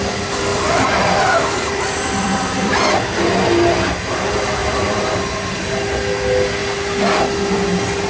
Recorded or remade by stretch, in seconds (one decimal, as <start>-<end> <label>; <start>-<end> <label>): 0.0-0.5 recorded; 0.5-2.7 remade; 2.7-4.6 recorded; 4.6-5.3 remade; 5.3-8.1 recorded